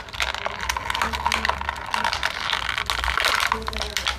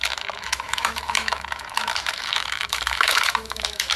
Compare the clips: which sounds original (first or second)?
first